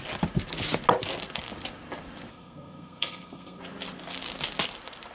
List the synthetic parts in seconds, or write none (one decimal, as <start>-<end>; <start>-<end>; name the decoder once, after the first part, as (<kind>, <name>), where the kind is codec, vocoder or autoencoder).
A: 2.3-3.6 (codec, SNAC)